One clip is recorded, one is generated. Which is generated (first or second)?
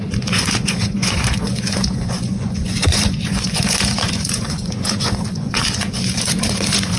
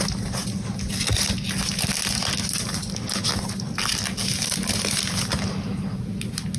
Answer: first